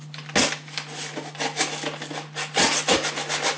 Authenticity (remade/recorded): recorded